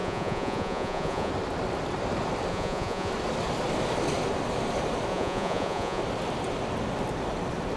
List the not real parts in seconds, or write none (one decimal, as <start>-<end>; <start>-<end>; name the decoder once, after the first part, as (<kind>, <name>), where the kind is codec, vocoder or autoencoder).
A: 0.0-1.3 (vocoder, Vocos); 2.5-3.1; 5.1-6.0